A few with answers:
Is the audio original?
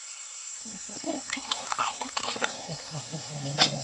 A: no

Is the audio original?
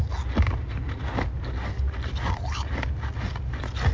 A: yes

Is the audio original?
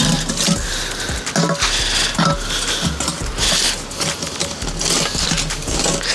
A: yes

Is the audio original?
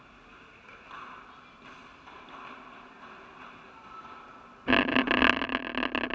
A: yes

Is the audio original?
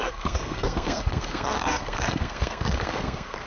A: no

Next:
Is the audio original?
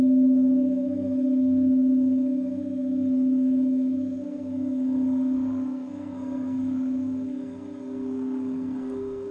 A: no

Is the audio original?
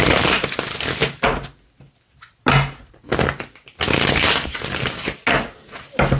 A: yes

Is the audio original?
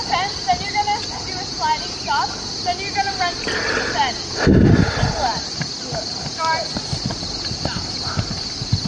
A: yes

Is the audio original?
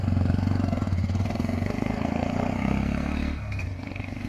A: no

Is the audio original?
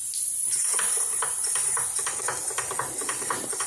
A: yes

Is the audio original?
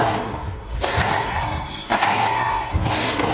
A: no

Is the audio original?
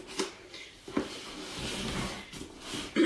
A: yes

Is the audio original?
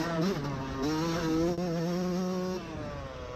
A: yes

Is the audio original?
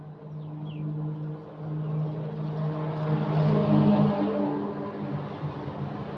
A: yes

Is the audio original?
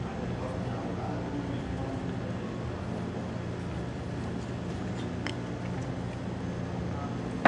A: yes